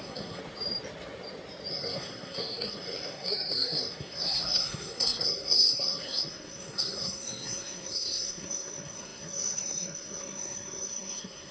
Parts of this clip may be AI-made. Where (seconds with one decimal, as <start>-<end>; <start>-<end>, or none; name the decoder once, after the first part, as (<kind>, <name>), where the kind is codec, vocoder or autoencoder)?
0.0-0.4 (codec, SNAC); 1.7-11.5